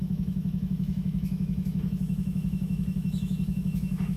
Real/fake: fake